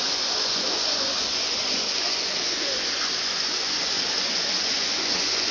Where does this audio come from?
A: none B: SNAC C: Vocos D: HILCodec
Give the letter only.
C